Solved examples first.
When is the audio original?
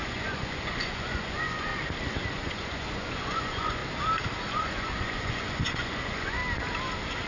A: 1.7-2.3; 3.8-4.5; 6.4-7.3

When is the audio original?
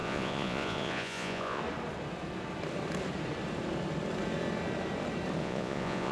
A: 1.6-5.4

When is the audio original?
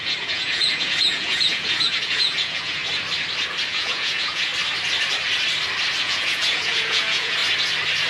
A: 2.8-3.7; 4.5-6.0; 7.4-8.1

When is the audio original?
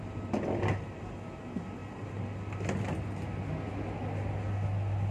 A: 0.0-5.1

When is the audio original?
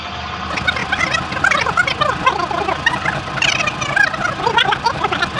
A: 0.0-5.4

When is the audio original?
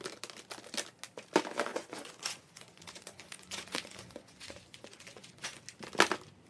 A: 0.0-1.7; 5.6-6.5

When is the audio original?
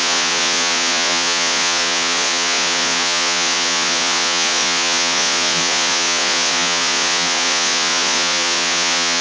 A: none